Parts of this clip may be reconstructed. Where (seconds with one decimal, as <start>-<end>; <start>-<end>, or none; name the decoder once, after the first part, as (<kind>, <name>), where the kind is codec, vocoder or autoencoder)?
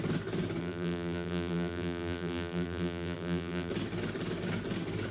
0.6-3.7 (vocoder, BigVGAN v2)